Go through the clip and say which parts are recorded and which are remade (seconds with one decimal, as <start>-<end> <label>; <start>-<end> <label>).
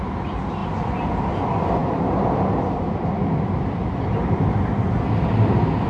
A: 0.0-0.6 recorded; 0.6-1.2 remade; 1.2-1.8 recorded; 1.8-5.3 remade; 5.3-5.9 recorded